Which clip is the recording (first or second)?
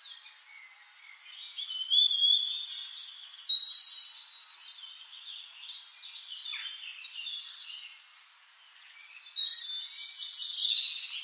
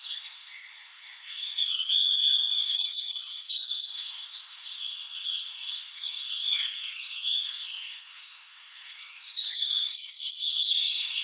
first